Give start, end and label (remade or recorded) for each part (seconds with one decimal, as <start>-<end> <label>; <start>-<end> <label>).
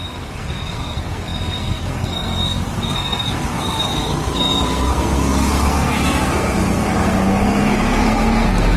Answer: 0.0-8.8 remade